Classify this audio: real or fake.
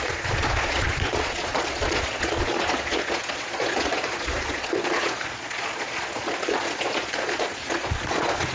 fake